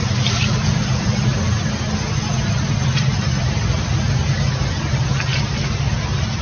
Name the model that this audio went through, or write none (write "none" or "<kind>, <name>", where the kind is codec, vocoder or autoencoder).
none